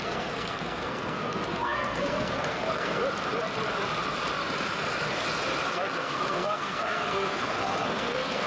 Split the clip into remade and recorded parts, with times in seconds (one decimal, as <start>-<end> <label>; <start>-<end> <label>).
0.0-3.0 remade; 3.0-5.7 recorded; 5.7-8.5 remade